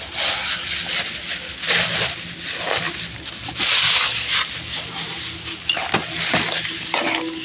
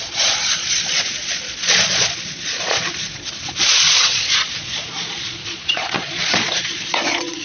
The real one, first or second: first